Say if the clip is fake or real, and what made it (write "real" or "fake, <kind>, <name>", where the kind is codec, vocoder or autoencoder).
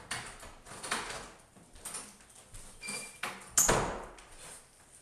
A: real